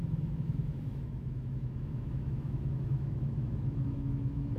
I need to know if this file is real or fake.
fake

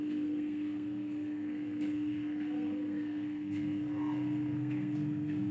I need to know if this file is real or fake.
fake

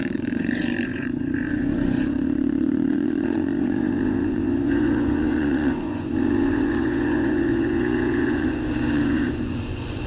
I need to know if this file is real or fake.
fake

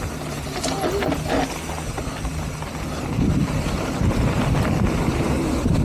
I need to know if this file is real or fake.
real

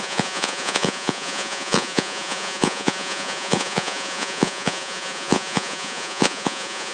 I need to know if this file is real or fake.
fake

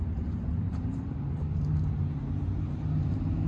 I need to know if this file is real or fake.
fake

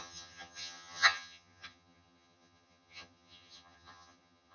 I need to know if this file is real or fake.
fake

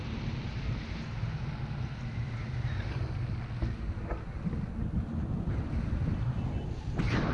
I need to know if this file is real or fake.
real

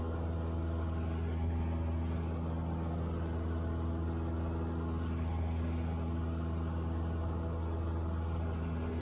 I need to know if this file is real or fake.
real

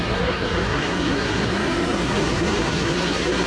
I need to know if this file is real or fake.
fake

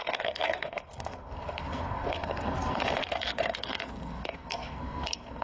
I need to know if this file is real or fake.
fake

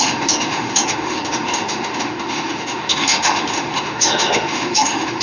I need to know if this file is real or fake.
fake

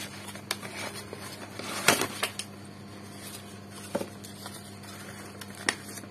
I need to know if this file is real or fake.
real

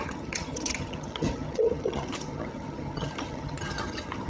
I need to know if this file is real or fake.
fake